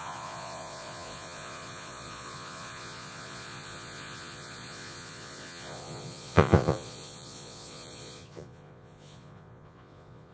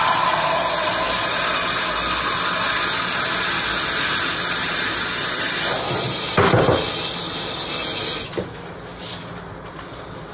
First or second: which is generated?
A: first